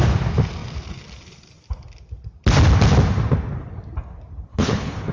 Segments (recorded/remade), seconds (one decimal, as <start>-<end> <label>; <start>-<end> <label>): 0.0-4.5 recorded; 4.5-5.1 remade